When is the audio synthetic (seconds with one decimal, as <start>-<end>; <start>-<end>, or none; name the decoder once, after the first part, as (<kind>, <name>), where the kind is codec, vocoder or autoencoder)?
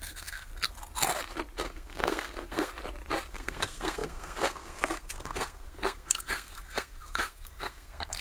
0.0-0.5 (codec, SNAC); 1.6-2.7; 3.3-8.2